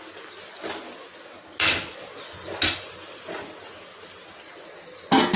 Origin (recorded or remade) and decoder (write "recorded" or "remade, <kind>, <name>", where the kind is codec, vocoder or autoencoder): recorded